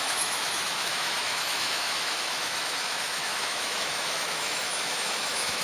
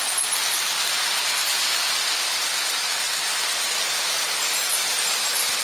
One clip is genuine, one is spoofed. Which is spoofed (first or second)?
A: first